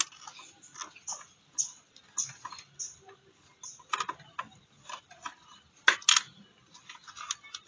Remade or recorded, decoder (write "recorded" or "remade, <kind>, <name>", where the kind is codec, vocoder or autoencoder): recorded